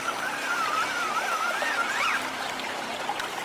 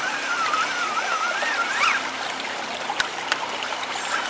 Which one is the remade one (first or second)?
second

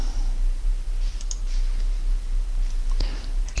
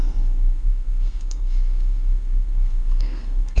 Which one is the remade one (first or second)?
second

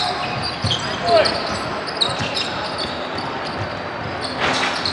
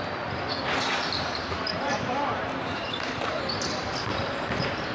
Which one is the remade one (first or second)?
second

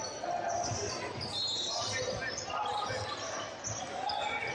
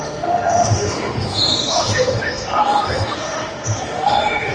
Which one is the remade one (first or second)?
second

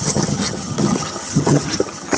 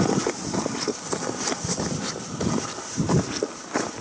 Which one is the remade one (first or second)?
first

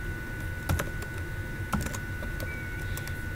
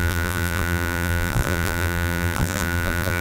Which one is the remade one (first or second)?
second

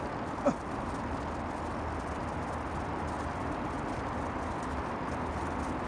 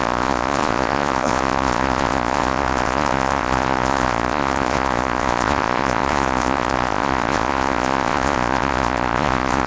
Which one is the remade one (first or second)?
second